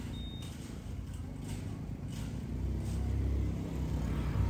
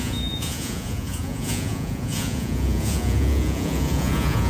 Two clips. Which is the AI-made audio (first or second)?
second